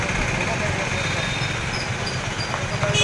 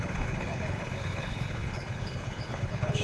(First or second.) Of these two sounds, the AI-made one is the second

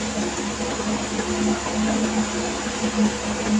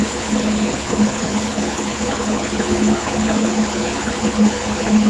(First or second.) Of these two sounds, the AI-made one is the second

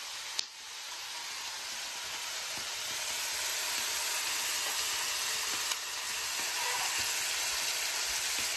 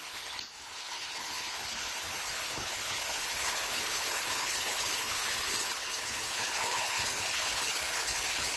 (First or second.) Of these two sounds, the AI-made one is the second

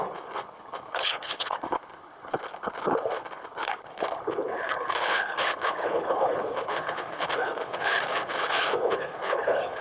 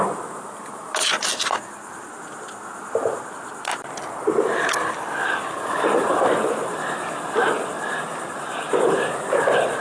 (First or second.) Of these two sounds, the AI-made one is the first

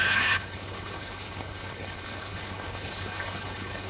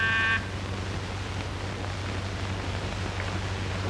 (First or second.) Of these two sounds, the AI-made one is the first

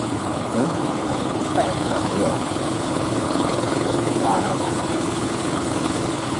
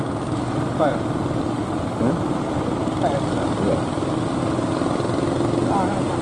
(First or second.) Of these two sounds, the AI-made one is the first